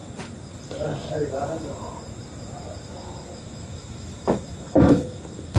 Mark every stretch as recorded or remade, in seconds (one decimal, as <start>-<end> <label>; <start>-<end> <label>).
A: 0.0-3.4 recorded; 3.4-5.6 remade